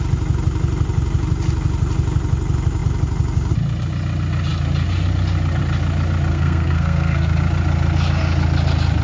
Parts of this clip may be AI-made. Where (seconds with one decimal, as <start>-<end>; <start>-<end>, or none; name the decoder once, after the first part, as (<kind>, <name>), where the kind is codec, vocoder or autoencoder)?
6.3-7.3 (codec, SNAC)